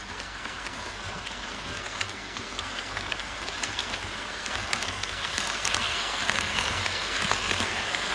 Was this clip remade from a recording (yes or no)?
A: yes